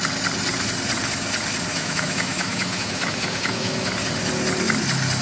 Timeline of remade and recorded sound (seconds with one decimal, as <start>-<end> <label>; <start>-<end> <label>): 0.0-1.7 recorded; 1.7-3.9 remade; 3.9-5.2 recorded

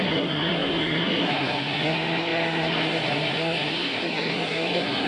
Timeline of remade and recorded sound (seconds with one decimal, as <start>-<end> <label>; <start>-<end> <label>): 0.0-5.1 remade

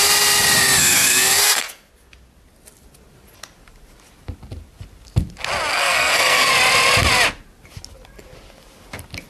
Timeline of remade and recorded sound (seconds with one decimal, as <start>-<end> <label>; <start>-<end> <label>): 0.0-0.8 recorded; 0.8-1.9 remade; 1.9-5.7 recorded; 5.7-6.5 remade; 6.5-9.3 recorded

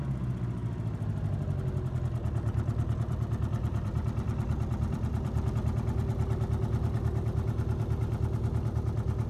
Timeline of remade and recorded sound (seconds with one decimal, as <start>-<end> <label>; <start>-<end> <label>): 0.0-0.6 recorded; 0.6-5.5 remade; 5.5-9.3 recorded

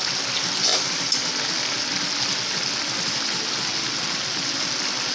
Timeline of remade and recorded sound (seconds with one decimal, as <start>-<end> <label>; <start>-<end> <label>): 0.0-0.7 recorded; 0.7-1.3 remade; 1.3-5.1 recorded

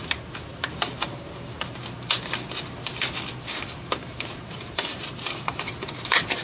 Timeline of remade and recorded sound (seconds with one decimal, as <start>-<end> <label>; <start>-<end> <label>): 0.0-0.7 recorded; 0.7-1.8 remade; 1.8-4.0 recorded; 4.0-5.7 remade; 5.7-6.4 recorded